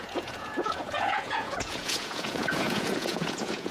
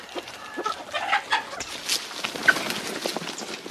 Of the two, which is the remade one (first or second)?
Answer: first